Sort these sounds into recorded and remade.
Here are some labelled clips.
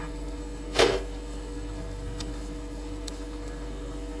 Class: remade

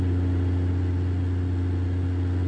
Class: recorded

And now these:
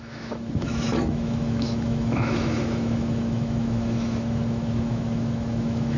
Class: remade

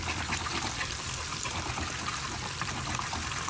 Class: recorded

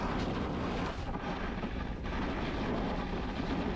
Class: recorded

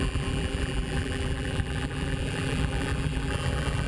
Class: remade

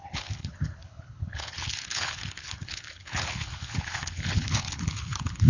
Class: remade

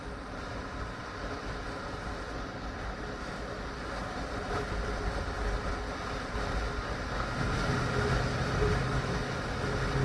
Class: recorded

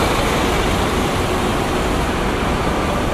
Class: recorded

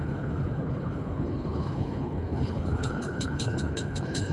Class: remade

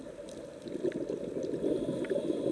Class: recorded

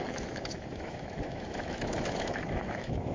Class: remade